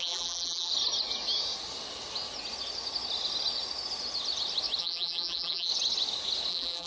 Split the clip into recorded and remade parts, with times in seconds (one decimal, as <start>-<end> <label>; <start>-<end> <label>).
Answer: 0.0-0.7 remade; 0.7-4.8 recorded; 4.8-5.7 remade; 5.7-6.5 recorded; 6.5-6.9 remade